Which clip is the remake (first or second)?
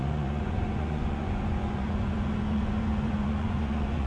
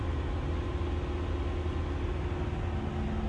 first